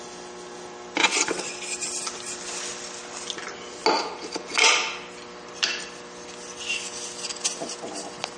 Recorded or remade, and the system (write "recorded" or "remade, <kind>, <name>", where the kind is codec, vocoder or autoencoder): recorded